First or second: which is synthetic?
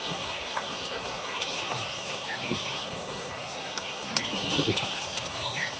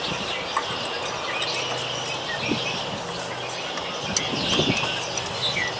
first